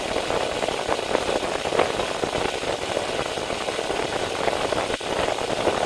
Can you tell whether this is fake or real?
real